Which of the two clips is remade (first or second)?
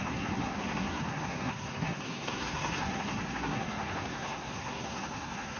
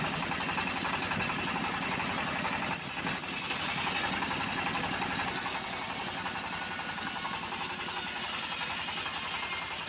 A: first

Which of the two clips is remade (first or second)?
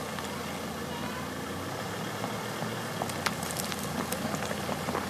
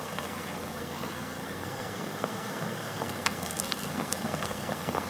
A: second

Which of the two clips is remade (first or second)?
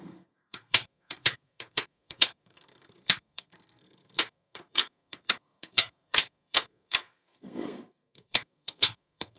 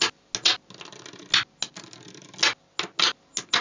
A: first